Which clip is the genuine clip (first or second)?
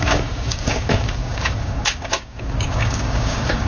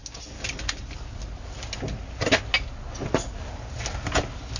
second